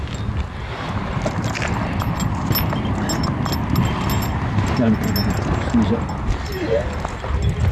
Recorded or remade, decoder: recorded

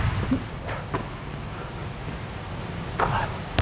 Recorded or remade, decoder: recorded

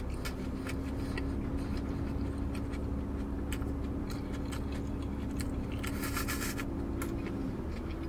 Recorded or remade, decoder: recorded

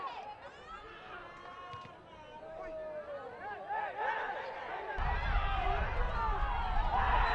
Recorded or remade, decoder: recorded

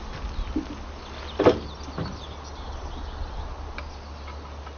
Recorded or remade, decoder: recorded